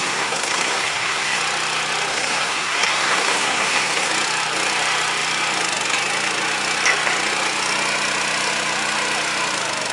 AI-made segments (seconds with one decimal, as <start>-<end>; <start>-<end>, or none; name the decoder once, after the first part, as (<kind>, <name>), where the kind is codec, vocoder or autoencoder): 0.0-1.4 (codec, SNAC); 2.1-4.1